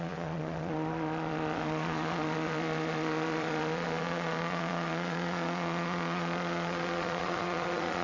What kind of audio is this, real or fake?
fake